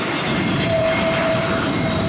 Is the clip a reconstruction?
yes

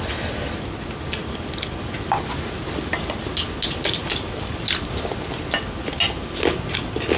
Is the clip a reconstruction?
no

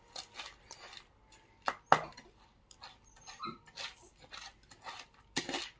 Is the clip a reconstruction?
no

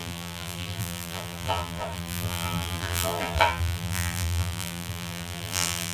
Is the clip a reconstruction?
yes